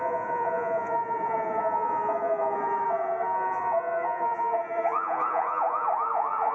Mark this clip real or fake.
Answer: fake